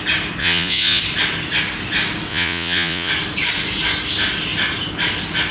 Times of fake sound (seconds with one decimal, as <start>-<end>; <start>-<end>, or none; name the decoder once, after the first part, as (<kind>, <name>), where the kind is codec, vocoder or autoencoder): 0.4-1.0 (vocoder, Vocos); 2.3-3.1